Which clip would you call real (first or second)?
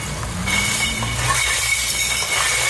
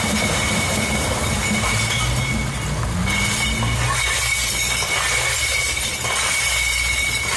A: second